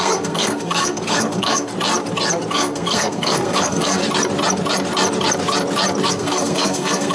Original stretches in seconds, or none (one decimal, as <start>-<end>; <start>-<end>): 1.7-2.5; 4.0-6.1